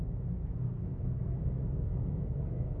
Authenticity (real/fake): fake